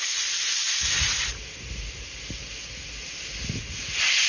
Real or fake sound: real